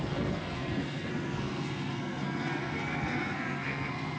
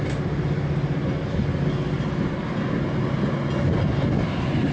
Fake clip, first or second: first